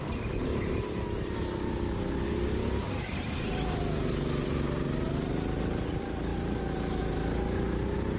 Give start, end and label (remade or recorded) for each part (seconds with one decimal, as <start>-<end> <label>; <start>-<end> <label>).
0.0-8.2 recorded